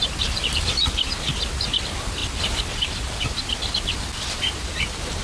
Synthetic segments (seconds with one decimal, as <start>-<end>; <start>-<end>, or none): none